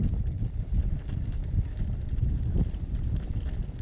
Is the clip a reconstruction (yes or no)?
no